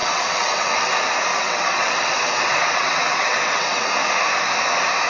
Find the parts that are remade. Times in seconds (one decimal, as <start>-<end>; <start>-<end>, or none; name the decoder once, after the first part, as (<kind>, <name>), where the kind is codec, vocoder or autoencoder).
0.0-0.9 (vocoder, WaveNeXt); 1.3-3.9